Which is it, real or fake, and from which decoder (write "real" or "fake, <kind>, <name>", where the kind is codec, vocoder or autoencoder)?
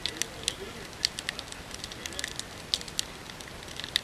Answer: real